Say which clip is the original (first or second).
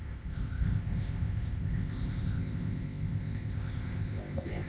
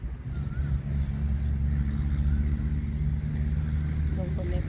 second